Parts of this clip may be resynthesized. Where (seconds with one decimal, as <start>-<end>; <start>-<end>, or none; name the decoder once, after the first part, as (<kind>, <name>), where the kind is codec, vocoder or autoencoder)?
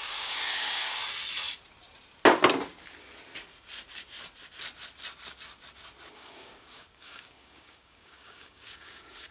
0.0-1.0 (codec, DAC); 6.1-9.3